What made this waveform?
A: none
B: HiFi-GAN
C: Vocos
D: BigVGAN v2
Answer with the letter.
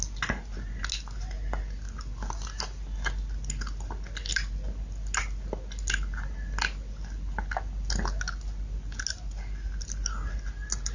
A